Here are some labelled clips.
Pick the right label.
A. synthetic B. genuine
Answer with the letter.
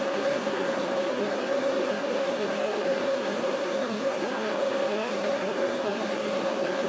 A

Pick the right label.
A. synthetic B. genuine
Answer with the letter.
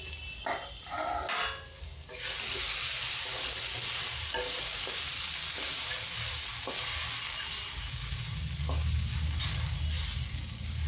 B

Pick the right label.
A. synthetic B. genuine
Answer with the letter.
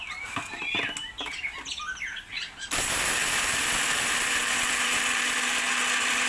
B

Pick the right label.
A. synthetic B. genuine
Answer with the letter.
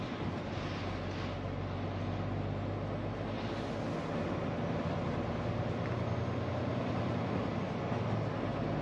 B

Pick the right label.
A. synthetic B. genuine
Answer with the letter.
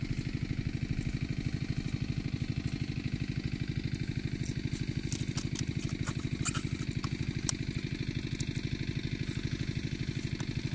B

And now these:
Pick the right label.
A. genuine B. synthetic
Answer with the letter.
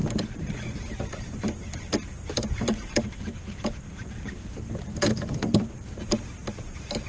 B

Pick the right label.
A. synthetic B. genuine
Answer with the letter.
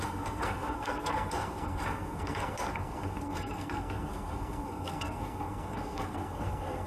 A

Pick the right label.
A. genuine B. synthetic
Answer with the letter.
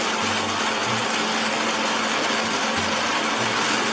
A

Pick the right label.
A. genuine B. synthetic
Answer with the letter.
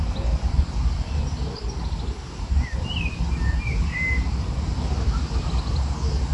A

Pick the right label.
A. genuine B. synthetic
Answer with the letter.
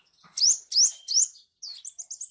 A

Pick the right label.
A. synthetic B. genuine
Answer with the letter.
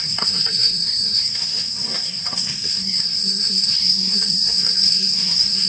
A